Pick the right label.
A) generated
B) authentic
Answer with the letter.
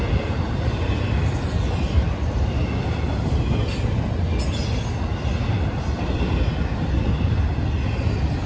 B